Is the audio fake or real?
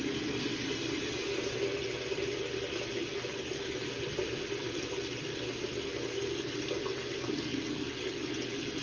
real